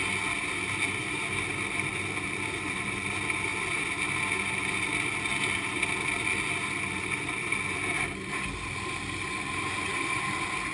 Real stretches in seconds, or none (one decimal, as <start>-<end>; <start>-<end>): 0.0-10.7